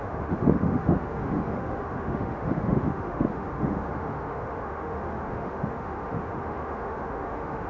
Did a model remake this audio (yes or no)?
yes